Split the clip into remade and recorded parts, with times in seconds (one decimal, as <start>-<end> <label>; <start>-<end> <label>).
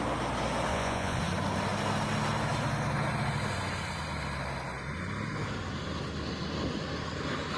0.0-0.7 recorded; 0.7-1.2 remade; 1.2-7.6 recorded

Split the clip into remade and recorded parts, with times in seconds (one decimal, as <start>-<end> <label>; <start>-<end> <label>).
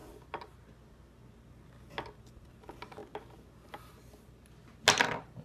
0.0-5.4 recorded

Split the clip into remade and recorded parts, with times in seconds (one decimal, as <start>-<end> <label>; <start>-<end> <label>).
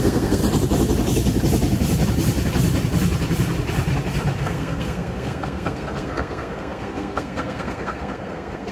0.0-0.4 remade; 0.4-4.4 recorded; 4.4-8.7 remade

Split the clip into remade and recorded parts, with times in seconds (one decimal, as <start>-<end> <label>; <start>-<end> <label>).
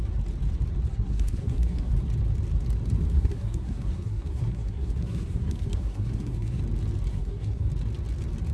0.0-0.9 recorded; 0.9-1.9 remade; 1.9-3.1 recorded; 3.1-6.6 remade; 6.6-7.1 recorded; 7.1-7.7 remade; 7.7-8.5 recorded